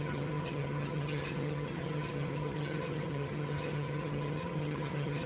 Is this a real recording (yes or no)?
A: no